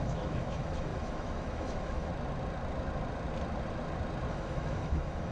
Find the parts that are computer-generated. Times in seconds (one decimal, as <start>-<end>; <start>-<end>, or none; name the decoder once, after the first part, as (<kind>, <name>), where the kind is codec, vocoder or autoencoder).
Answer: 0.0-2.1 (autoencoder, DAC-VAE); 4.3-5.3